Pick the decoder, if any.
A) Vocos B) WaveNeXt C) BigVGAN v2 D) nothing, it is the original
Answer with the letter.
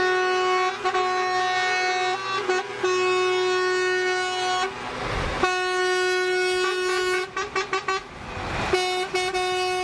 D